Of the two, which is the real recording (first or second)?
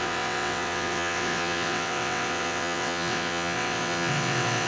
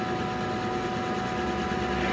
second